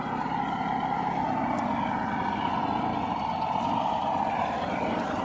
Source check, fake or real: real